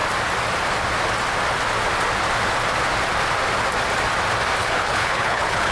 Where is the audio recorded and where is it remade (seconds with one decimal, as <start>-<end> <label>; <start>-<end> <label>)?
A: 0.0-4.6 recorded; 4.6-5.7 remade